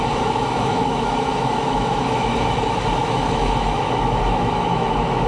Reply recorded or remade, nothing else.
remade